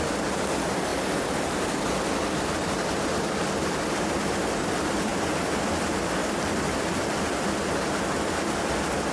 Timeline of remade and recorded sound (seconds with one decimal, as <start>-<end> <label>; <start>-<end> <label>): 0.0-5.1 recorded; 5.1-5.6 remade; 5.6-6.2 recorded; 6.2-7.8 remade; 7.8-9.1 recorded